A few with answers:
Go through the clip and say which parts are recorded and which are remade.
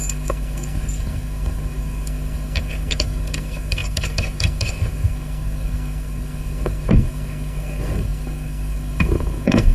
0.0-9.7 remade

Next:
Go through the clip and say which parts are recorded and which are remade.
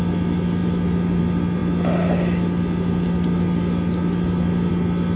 0.0-5.2 recorded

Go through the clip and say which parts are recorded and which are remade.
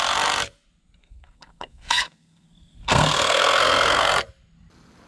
0.0-1.0 recorded; 1.0-4.1 remade; 4.1-5.1 recorded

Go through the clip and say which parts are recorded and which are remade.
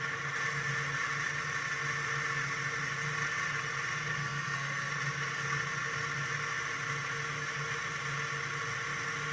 0.0-4.1 recorded; 4.1-4.9 remade; 4.9-9.3 recorded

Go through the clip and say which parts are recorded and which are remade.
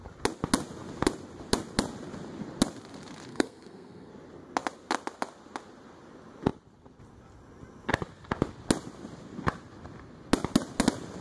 0.0-3.3 recorded; 3.3-4.1 remade; 4.1-11.2 recorded